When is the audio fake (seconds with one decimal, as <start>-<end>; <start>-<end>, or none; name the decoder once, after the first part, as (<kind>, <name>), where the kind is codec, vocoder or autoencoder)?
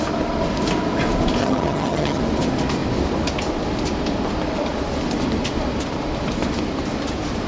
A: 1.4-2.2 (vocoder, HiFi-GAN)